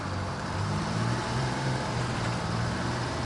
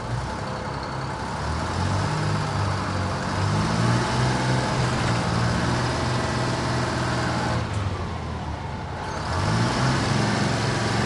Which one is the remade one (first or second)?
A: first